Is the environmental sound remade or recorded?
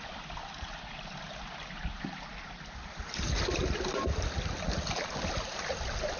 recorded